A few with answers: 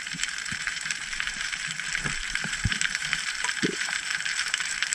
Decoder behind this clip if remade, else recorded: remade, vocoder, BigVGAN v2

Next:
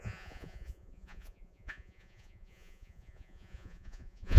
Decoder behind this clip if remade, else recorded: remade, vocoder, Vocos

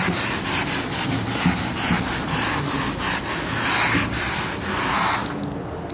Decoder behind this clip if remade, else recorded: recorded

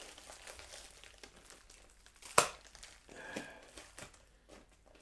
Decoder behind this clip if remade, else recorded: recorded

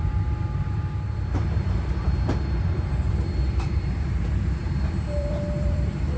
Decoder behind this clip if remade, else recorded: remade, vocoder, BigVGAN v2